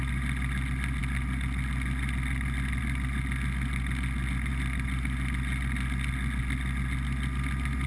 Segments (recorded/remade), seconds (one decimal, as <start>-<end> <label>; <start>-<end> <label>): 0.0-7.9 recorded